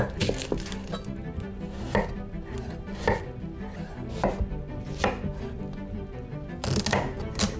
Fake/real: real